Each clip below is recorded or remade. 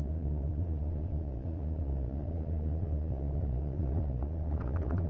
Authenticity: remade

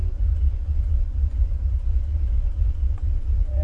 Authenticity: remade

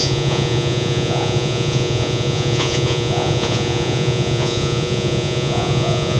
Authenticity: remade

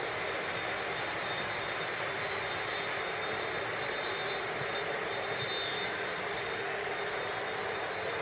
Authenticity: recorded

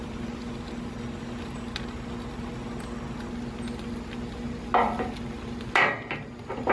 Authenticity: recorded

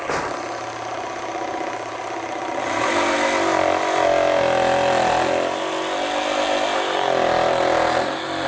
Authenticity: recorded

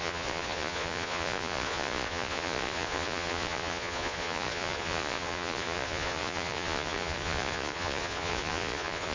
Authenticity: remade